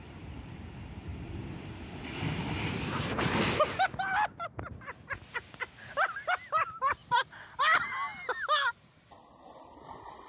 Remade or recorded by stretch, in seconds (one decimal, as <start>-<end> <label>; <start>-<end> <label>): 0.0-7.0 recorded; 7.0-7.6 remade; 7.6-10.3 recorded